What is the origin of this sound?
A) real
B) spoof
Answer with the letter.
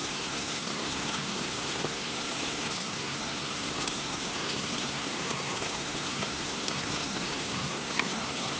B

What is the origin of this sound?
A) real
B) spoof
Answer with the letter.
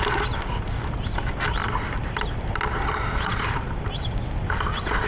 A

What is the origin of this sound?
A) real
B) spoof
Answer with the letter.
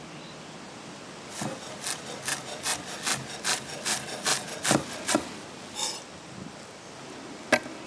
A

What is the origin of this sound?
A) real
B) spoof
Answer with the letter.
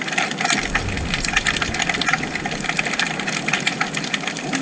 A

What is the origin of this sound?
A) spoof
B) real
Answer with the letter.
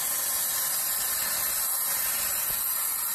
B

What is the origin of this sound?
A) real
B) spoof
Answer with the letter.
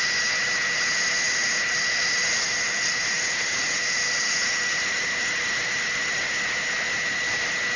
A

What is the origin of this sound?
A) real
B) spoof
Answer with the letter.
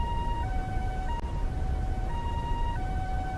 A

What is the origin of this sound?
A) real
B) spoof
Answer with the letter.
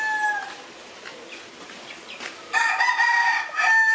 A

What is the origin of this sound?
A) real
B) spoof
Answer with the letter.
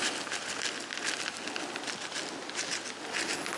A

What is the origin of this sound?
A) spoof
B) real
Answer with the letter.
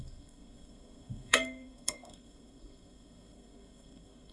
A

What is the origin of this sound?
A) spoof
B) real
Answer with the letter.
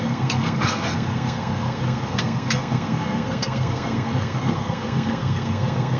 A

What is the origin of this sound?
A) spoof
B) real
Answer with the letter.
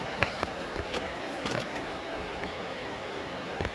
A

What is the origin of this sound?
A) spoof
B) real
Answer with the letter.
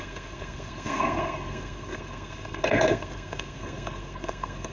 A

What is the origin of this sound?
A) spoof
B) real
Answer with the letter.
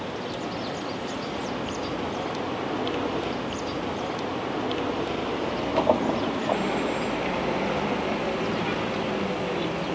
B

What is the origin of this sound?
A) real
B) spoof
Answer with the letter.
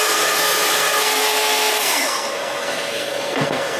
B